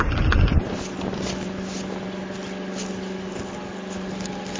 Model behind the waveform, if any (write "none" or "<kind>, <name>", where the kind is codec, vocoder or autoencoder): none